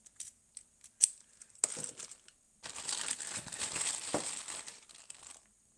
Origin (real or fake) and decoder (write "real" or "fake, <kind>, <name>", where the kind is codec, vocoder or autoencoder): real